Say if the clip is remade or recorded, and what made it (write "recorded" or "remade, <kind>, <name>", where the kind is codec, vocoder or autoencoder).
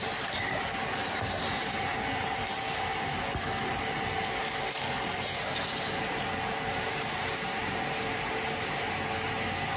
recorded